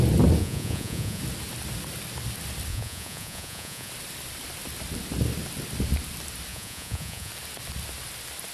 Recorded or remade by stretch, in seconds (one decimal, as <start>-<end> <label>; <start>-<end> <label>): 0.0-0.4 recorded; 0.4-1.2 remade; 1.2-2.7 recorded; 2.7-3.9 remade; 3.9-6.5 recorded; 6.5-7.3 remade; 7.3-8.5 recorded